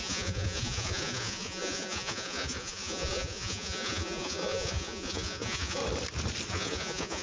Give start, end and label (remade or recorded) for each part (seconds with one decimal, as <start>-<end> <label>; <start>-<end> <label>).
0.0-5.8 remade; 5.8-6.5 recorded; 6.5-7.2 remade